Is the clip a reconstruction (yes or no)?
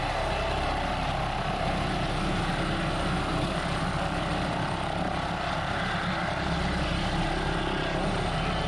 no